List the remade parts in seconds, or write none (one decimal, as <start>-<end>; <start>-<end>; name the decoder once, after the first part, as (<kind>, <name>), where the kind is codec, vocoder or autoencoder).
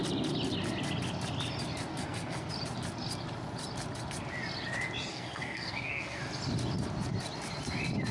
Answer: 1.9-2.5 (codec, SNAC); 5.1-6.2